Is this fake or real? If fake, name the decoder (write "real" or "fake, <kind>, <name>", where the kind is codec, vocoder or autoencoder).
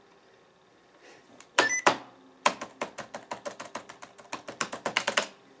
fake, vocoder, BigVGAN v2